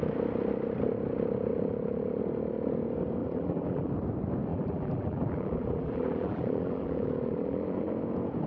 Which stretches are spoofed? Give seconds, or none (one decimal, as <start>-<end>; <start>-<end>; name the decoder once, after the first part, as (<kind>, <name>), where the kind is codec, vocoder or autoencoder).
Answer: 1.5-2.2 (vocoder, BigVGAN v2); 3.2-3.9; 4.5-7.9